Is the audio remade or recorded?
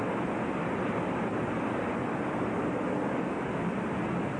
recorded